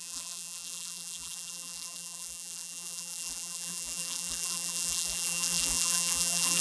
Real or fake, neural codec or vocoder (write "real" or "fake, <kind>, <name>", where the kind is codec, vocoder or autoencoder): fake, vocoder, BigVGAN v2